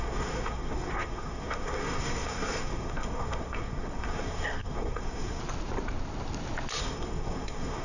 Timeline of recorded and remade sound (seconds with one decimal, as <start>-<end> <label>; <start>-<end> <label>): 0.0-5.4 remade; 5.4-6.8 recorded; 6.8-7.8 remade